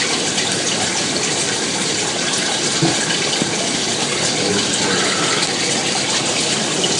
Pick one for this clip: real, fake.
real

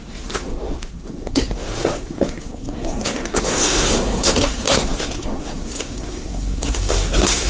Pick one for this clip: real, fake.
fake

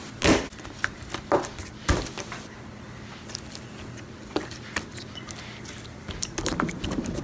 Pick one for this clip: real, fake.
real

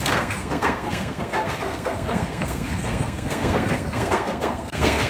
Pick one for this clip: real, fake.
fake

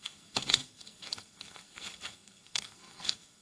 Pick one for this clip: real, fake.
fake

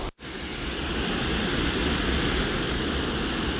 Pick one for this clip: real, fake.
real